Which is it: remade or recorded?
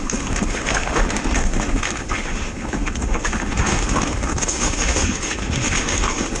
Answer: remade